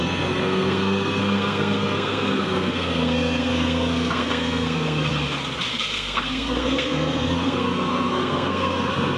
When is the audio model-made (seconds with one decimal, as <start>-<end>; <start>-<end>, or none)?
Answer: 0.0-5.1; 5.7-9.2